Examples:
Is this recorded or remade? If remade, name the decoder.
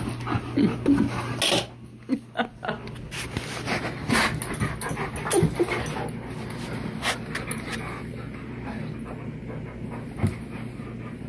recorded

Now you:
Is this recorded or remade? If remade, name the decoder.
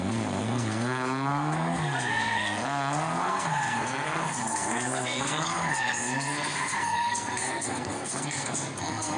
remade, codec, SNAC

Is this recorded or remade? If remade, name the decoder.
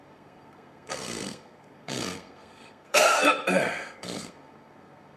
remade, codec, SNAC